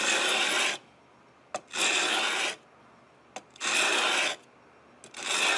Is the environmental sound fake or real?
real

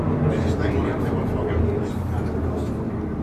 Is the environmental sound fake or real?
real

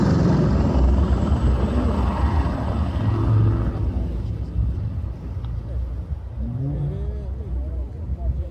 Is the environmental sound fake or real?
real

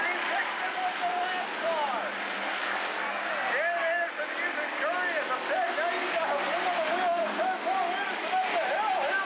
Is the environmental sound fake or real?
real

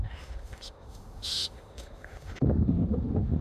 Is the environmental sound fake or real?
fake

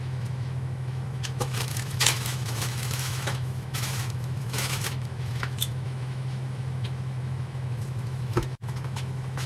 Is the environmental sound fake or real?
fake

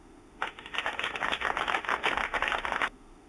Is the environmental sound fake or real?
fake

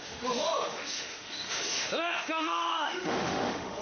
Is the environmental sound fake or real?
fake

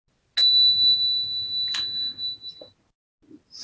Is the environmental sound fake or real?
real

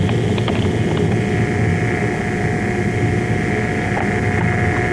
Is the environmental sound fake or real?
real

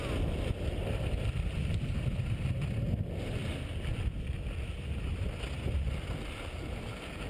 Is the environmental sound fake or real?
real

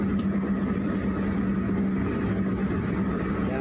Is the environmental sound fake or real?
real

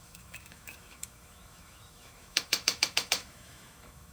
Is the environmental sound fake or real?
fake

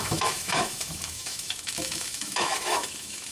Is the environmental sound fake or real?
fake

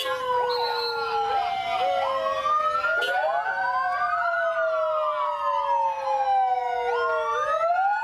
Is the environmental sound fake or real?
real